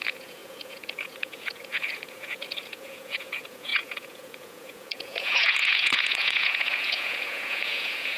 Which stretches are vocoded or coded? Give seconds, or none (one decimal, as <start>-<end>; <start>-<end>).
0.0-8.2